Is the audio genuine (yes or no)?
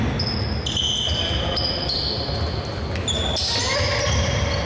yes